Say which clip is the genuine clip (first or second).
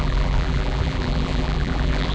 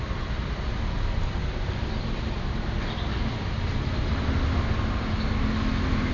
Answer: second